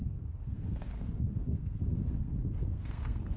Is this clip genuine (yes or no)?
no